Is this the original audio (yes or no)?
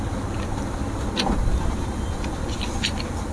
yes